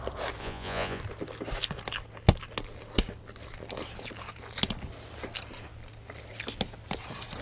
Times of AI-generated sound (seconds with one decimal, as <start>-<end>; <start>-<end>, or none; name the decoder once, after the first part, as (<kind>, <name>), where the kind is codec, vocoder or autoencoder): 0.4-1.0 (vocoder, Vocos)